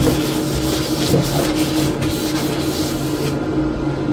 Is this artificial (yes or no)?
no